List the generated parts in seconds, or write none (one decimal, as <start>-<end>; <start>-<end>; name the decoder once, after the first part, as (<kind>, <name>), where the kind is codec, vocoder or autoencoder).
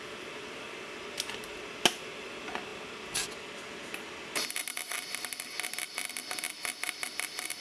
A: none